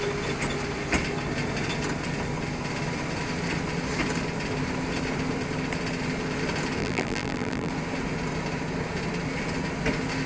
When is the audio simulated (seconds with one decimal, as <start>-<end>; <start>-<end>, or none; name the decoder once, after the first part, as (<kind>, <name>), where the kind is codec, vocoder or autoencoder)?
6.8-7.7 (vocoder, BigVGAN v2)